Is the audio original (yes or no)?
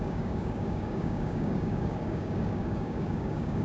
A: no